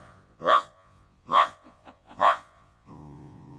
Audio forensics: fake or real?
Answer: fake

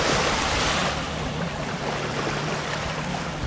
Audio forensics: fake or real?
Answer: real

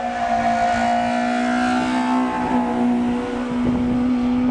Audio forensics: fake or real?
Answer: real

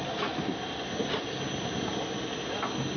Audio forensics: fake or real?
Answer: real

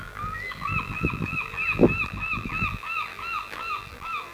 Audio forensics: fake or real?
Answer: fake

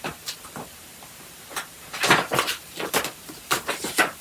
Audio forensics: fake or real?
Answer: fake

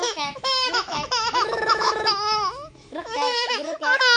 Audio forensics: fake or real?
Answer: fake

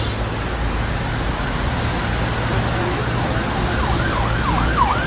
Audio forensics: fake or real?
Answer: real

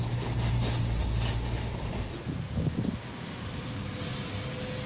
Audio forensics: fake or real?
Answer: real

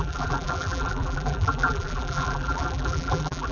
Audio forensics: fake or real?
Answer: fake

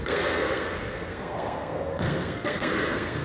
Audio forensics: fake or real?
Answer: fake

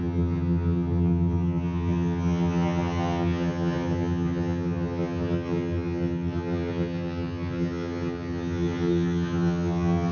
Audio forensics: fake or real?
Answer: fake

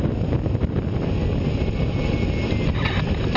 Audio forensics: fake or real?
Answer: real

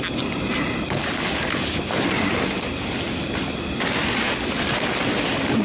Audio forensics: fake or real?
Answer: real